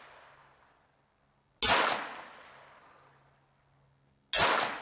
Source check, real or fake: real